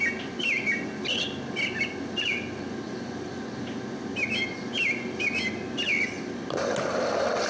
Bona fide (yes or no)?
yes